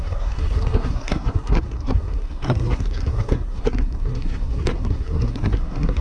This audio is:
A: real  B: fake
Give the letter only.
B